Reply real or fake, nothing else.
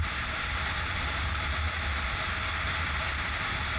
real